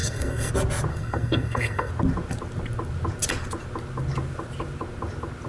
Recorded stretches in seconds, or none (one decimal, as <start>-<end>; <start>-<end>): 0.5-0.9; 1.9-5.5